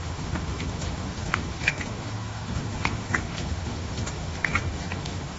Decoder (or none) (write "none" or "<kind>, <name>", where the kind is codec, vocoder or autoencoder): autoencoder, DAC-VAE